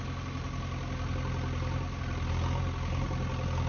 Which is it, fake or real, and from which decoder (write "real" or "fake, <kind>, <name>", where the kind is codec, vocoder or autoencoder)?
real